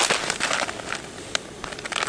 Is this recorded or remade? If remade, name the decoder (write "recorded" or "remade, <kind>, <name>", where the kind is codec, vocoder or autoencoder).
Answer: recorded